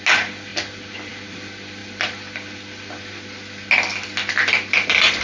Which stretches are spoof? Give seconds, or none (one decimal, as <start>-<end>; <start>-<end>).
none